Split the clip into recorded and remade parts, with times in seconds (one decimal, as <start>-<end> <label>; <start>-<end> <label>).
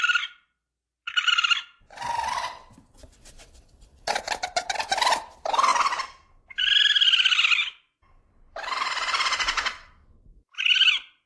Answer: 0.0-3.0 recorded; 3.0-4.1 remade; 4.1-11.3 recorded